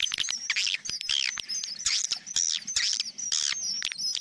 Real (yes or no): yes